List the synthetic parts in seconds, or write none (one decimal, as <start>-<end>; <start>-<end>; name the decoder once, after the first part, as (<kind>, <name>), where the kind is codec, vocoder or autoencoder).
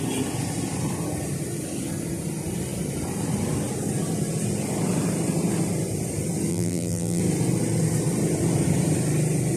6.5-7.2 (vocoder, BigVGAN v2)